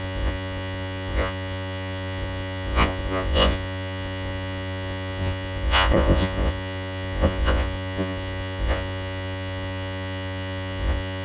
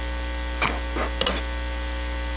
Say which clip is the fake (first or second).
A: first